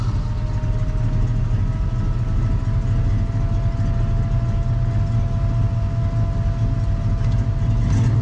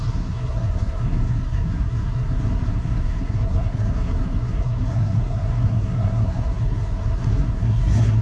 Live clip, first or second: first